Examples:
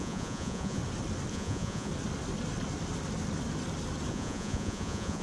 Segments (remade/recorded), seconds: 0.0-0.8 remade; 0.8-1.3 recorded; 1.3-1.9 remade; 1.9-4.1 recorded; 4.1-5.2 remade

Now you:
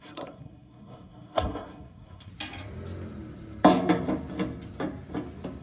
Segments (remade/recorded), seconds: 0.0-2.3 remade; 2.3-5.6 recorded

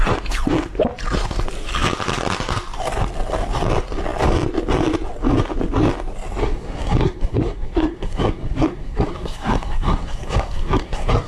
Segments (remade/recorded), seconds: 0.0-6.4 recorded; 6.4-11.3 remade

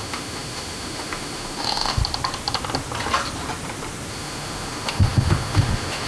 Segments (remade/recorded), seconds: 0.0-2.0 remade; 2.0-4.1 recorded; 4.1-6.1 remade